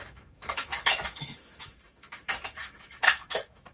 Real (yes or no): no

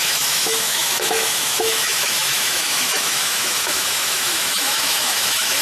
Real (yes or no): no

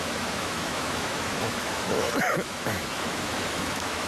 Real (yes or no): no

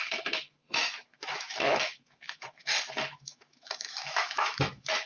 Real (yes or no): no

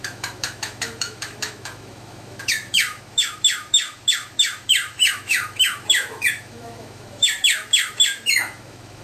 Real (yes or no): no